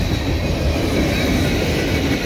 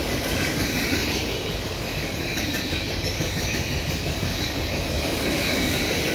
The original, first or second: first